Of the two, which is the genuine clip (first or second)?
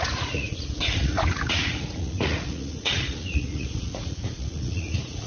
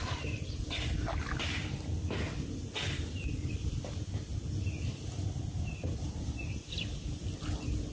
second